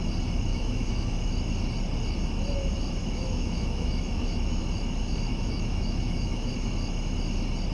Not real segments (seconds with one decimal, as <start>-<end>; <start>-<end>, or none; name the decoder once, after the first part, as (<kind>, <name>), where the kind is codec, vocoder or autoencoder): 0.5-1.3 (autoencoder, DAC-VAE); 3.0-4.6; 5.3-6.5